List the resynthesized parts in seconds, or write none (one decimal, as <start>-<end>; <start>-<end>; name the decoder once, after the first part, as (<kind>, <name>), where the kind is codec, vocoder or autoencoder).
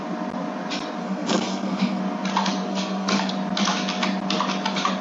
1.0-2.0 (codec, SNAC); 2.7-3.3